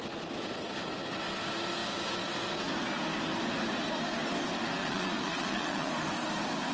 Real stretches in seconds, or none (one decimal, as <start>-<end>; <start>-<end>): 0.0-4.8; 5.9-6.7